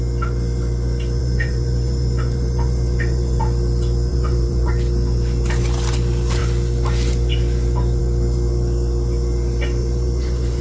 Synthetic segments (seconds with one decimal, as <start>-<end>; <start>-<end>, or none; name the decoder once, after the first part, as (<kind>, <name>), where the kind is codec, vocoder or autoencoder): 1.2-3.4 (vocoder, BigVGAN v2); 4.1-4.7; 9.8-10.6